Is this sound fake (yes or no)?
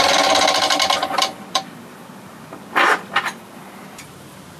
yes